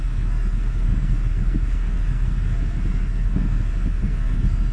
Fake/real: fake